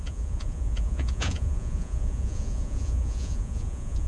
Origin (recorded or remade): remade